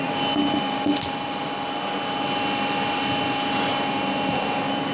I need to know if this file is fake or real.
real